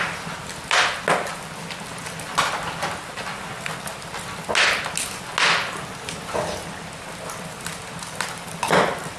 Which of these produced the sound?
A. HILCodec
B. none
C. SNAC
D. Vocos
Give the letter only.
B